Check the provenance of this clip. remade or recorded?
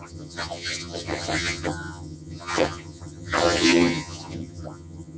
remade